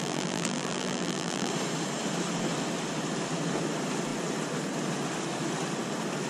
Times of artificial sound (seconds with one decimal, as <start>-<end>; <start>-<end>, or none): 0.0-1.5